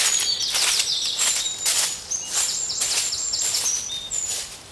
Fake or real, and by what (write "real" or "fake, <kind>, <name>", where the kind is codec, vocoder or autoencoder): real